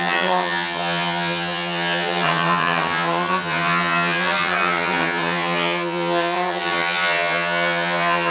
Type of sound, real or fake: fake